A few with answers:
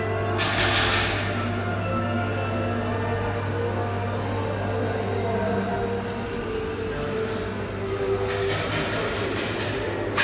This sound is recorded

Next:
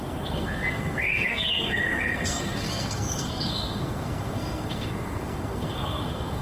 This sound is remade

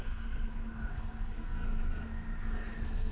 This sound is remade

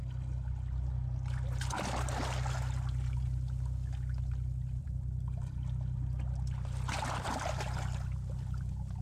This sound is recorded